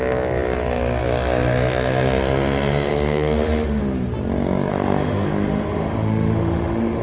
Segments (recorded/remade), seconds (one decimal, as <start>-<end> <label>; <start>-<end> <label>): 0.0-2.9 recorded; 2.9-3.8 remade; 3.8-4.7 recorded; 4.7-7.0 remade